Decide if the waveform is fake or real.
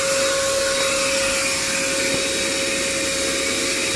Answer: real